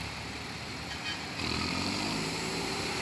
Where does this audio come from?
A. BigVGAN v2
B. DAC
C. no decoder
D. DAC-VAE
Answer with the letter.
A